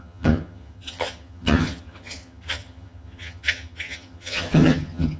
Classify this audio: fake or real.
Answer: fake